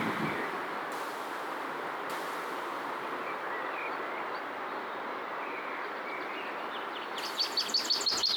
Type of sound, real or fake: real